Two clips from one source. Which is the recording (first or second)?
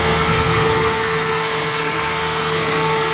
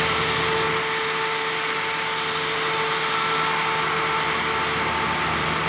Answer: second